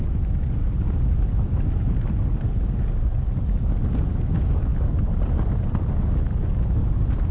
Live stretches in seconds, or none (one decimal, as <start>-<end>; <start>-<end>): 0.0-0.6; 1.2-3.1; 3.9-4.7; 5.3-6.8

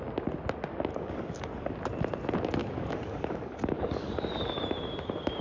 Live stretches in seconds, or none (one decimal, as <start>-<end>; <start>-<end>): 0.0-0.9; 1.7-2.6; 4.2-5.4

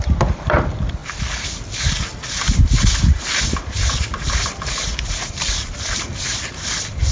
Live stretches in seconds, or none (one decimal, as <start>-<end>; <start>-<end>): 1.0-5.3

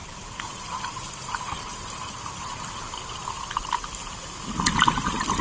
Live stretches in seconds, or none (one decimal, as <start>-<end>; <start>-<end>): 2.1-5.4

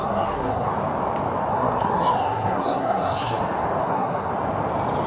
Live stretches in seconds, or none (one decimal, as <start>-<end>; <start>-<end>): 0.7-1.5; 3.4-3.8; 4.3-5.1

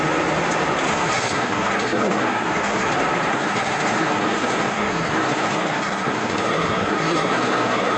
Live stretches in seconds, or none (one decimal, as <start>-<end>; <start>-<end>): 0.0-0.9; 2.9-3.3